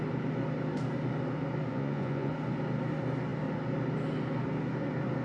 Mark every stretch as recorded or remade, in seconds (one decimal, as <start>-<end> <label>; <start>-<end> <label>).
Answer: 0.0-1.7 recorded; 1.7-2.3 remade; 2.3-5.2 recorded